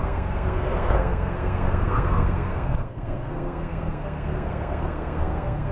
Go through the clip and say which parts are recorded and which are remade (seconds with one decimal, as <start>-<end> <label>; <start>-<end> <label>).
0.0-5.7 remade